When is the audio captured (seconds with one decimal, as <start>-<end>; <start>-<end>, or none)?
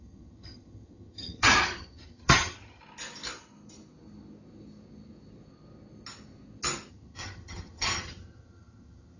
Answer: 2.8-6.9